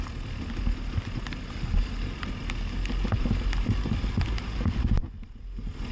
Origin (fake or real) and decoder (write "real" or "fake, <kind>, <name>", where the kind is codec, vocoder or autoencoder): real